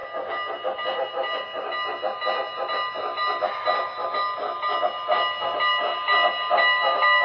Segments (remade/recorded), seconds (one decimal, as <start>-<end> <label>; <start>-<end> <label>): 0.0-7.2 recorded